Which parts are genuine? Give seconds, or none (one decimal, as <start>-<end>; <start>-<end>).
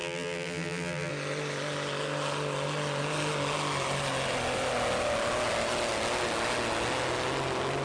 1.1-7.8